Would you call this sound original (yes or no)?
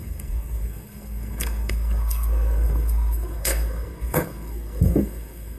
no